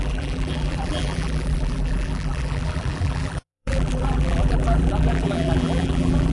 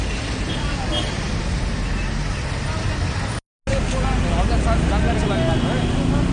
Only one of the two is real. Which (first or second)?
second